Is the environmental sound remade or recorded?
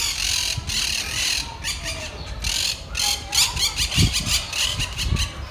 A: recorded